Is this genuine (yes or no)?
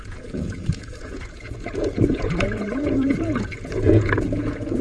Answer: no